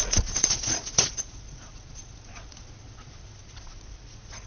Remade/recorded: remade